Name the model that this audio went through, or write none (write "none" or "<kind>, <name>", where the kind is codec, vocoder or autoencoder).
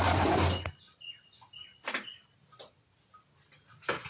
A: none